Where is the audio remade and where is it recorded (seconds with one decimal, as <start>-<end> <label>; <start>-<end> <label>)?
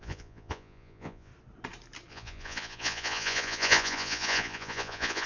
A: 0.0-1.3 remade; 1.3-2.1 recorded; 2.1-5.3 remade